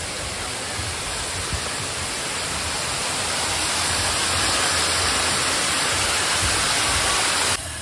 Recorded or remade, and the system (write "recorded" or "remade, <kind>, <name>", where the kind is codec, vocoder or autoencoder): recorded